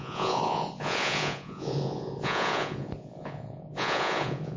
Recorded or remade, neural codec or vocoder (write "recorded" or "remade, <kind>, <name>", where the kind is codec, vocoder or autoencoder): remade, vocoder, Vocos